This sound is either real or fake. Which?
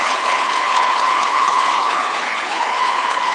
fake